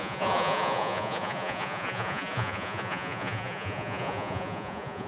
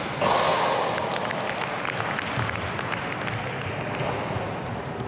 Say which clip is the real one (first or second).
second